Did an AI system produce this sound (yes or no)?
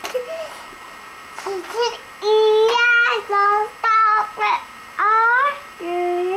no